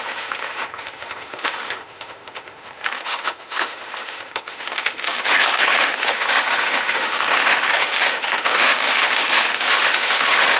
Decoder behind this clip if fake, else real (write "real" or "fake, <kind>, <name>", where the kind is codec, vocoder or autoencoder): fake, autoencoder, DAC-VAE